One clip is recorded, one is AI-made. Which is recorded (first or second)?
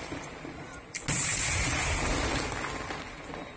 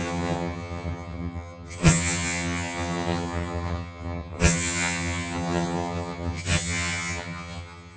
first